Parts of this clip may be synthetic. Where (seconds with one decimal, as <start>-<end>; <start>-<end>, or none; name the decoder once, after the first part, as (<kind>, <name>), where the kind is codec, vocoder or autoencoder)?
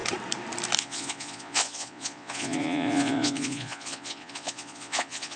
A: 0.8-5.4 (vocoder, Vocos)